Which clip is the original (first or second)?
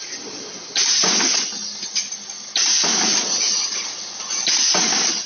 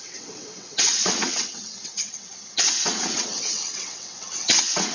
first